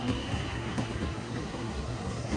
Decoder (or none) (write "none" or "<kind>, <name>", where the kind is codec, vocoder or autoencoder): codec, SNAC